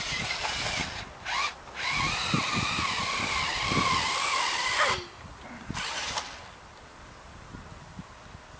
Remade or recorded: recorded